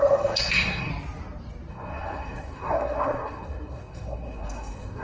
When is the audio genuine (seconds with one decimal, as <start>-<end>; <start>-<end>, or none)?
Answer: 0.9-1.7